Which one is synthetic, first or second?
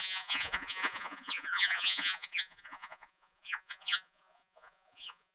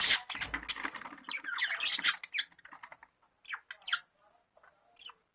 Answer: first